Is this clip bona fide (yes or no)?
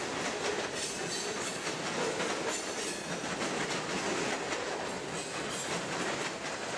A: yes